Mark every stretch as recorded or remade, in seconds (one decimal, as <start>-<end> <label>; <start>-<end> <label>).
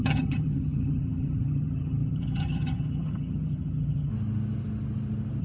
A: 0.0-4.1 remade; 4.1-5.4 recorded